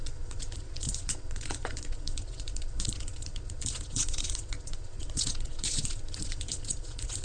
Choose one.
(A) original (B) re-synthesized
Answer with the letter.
B